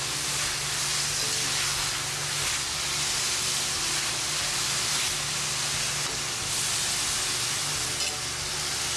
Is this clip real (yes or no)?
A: yes